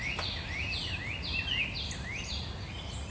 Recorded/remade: recorded